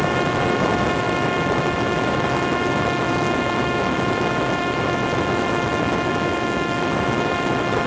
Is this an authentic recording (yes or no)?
no